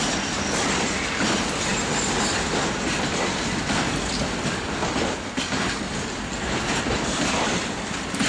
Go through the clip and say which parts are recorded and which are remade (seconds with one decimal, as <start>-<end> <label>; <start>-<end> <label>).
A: 0.0-8.3 recorded